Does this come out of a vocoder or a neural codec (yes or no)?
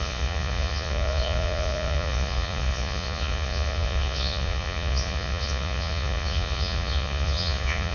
yes